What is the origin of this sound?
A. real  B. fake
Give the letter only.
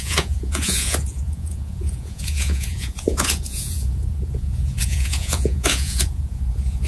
B